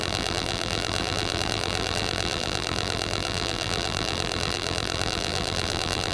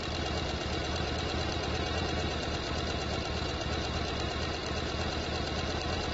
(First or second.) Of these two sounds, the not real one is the first